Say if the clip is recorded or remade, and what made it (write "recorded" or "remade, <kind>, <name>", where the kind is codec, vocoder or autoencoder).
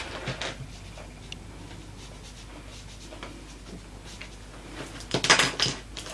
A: recorded